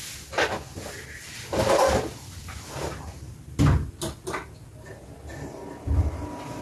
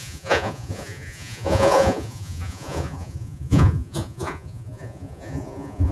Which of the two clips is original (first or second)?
first